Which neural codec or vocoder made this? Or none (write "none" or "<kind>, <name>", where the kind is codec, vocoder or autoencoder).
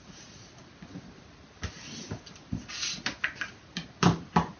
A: none